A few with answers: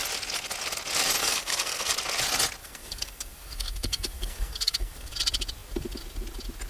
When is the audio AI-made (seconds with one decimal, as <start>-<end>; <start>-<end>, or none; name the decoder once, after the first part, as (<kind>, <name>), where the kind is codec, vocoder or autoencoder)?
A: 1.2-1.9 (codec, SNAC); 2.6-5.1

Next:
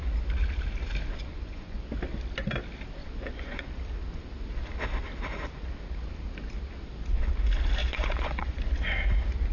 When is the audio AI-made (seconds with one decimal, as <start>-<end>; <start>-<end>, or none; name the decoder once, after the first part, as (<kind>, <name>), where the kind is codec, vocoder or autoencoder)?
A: 1.3-1.9 (vocoder, Vocos); 3.0-3.6; 7.8-8.7

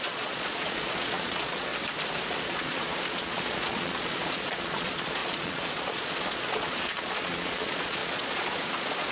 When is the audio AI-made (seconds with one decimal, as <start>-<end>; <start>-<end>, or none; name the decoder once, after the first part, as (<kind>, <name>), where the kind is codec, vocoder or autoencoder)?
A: 0.0-1.7 (vocoder, Vocos); 2.4-9.1